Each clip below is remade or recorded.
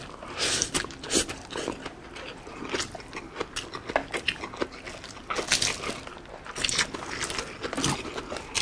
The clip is recorded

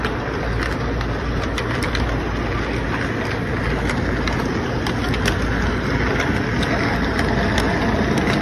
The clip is recorded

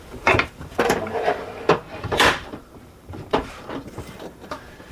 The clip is remade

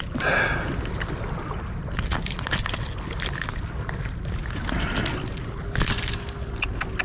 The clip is recorded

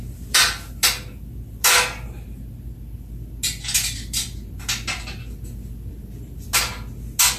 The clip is recorded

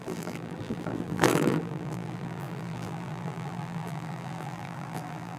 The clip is remade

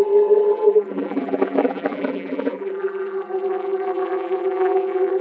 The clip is remade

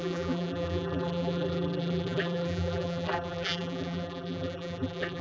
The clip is remade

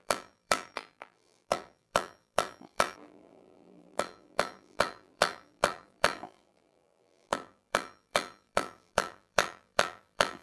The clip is remade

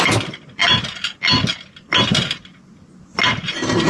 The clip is recorded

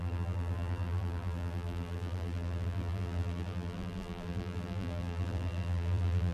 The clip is remade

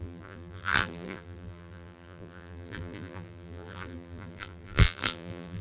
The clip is remade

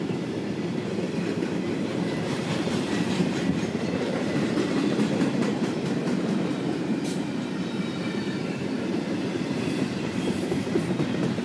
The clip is remade